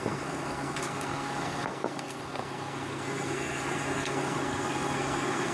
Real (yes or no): no